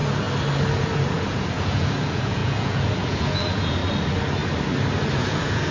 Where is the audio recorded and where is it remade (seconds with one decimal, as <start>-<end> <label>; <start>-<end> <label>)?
0.0-1.1 recorded; 1.1-3.8 remade; 3.8-5.1 recorded; 5.1-5.7 remade